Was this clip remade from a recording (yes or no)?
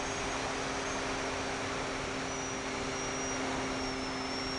no